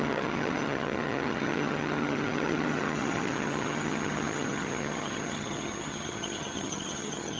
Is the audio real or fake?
fake